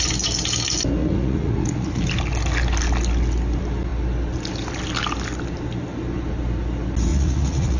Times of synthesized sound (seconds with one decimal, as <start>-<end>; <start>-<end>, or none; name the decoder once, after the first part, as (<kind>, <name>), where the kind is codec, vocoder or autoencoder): 1.0-2.0 (vocoder, Vocos); 7.1-7.8